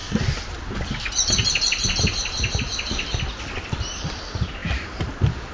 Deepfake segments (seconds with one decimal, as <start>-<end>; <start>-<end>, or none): none